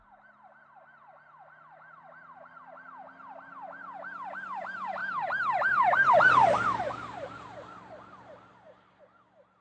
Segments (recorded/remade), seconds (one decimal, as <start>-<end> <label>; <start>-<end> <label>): 0.0-5.0 recorded; 5.0-9.0 remade; 9.0-9.6 recorded